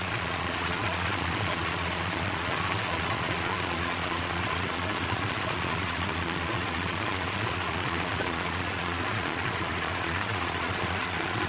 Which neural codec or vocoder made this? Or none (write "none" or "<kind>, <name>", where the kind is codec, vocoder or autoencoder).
vocoder, Vocos